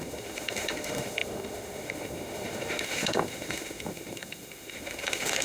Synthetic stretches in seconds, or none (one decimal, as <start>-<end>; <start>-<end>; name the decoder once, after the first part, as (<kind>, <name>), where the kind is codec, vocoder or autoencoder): 0.0-5.4 (autoencoder, DAC-VAE)